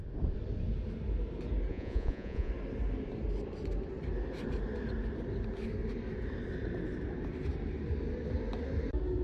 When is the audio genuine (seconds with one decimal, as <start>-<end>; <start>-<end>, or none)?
0.0-1.7; 2.5-9.2